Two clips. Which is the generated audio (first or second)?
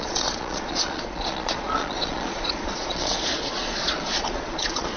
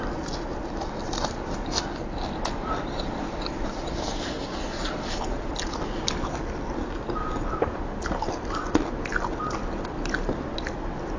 first